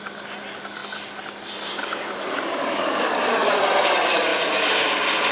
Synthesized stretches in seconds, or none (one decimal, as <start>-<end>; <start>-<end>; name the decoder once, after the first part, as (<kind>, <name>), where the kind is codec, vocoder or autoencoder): 2.6-3.5 (codec, DAC)